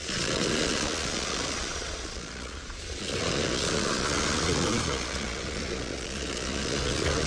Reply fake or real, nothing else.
fake